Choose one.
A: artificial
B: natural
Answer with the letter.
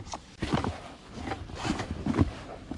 B